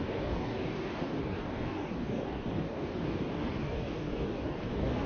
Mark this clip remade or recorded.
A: remade